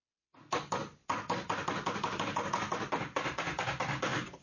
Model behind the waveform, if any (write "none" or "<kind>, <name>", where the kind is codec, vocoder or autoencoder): none